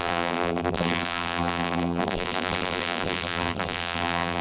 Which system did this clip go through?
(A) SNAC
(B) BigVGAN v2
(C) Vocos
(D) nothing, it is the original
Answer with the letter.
B